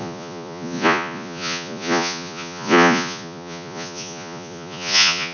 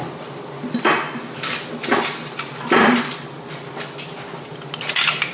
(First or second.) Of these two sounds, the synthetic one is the first